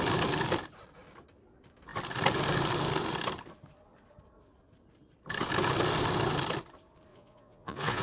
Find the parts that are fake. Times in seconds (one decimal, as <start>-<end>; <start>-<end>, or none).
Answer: 7.1-8.0